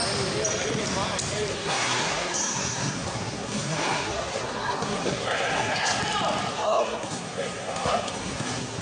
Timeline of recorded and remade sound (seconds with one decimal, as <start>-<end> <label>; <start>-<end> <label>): 0.0-1.5 recorded; 1.5-6.0 remade; 6.0-6.5 recorded; 6.5-8.8 remade